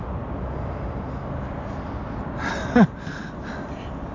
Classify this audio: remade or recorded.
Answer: recorded